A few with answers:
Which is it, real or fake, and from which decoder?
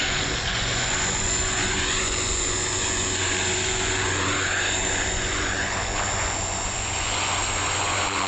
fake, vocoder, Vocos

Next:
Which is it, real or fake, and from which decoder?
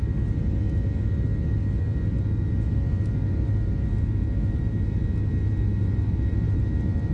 real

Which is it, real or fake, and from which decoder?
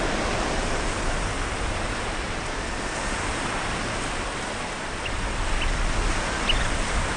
real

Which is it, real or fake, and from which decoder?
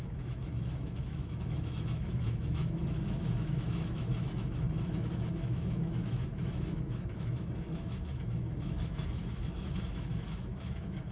fake, autoencoder, DAC-VAE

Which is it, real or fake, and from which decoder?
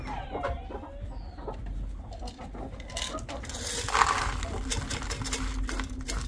real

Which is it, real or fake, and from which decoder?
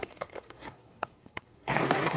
fake, codec, SNAC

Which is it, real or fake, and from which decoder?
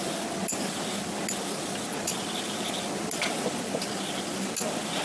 real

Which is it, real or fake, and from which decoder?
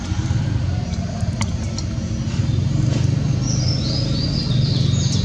real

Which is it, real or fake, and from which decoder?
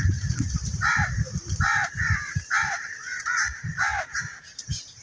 fake, vocoder, BigVGAN v2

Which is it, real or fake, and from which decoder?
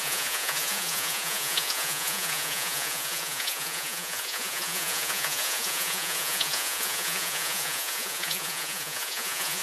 fake, vocoder, Vocos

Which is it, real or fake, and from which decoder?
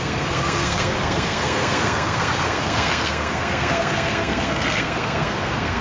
fake, codec, SNAC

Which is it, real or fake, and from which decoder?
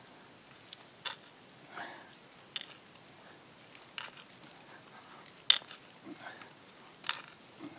real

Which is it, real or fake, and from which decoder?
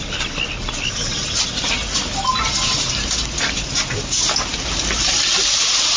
real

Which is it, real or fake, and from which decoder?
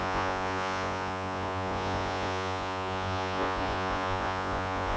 fake, vocoder, Vocos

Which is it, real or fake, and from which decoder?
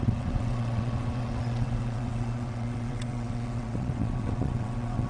fake, vocoder, WaveNeXt